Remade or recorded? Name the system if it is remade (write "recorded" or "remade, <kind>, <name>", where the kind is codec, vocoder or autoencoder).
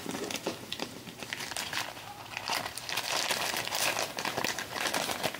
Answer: recorded